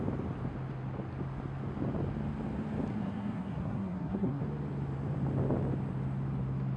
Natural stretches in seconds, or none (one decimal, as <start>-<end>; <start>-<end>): 0.0-2.9; 4.4-6.8